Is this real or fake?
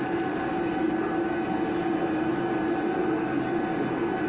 real